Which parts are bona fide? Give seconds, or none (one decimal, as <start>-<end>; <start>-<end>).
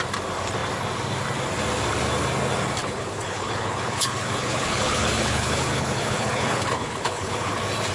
0.0-2.8; 7.5-7.9